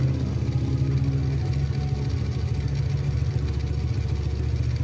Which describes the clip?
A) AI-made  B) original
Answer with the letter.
B